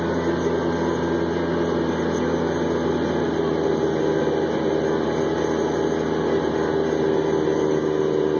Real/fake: real